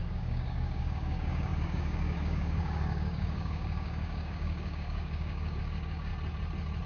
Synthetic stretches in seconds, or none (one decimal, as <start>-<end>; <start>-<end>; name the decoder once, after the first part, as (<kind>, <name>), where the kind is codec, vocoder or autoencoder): 0.0-6.1 (codec, DAC)